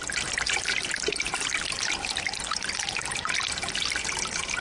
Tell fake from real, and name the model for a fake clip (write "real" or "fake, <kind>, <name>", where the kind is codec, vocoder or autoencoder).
real